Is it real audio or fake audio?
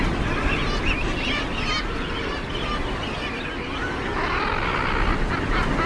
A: real